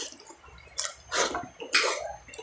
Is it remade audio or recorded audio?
recorded